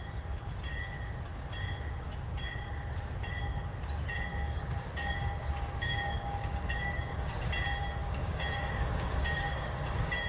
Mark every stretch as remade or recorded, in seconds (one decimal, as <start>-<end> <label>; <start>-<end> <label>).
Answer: 0.0-4.3 recorded; 4.3-7.5 remade; 7.5-8.0 recorded; 8.0-10.3 remade